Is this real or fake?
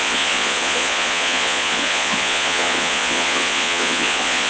fake